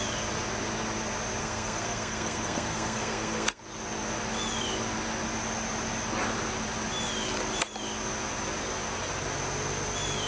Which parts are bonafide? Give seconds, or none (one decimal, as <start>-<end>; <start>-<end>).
0.0-1.4; 3.6-10.3